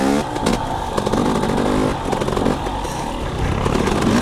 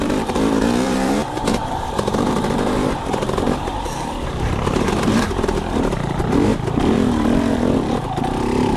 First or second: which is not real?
second